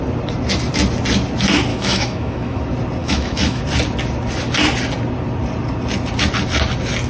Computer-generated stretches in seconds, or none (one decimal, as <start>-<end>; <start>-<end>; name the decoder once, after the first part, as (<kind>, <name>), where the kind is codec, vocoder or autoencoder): 1.7-2.6 (autoencoder, DAC-VAE); 3.0-3.6